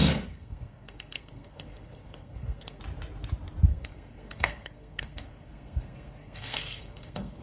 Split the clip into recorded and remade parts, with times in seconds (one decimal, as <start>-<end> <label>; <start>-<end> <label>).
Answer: 0.0-2.8 remade; 2.8-3.7 recorded; 3.7-7.4 remade